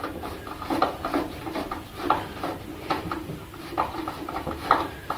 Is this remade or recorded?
remade